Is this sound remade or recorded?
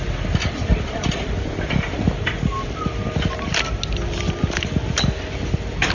recorded